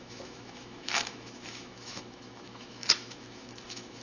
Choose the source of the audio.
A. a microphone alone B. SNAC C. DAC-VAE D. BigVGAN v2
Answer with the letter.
C